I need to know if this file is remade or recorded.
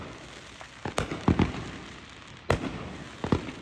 recorded